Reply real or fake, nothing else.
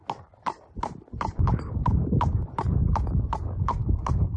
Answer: real